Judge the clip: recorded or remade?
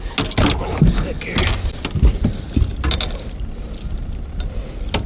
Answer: recorded